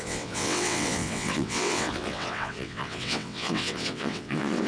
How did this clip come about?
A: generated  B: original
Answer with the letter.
A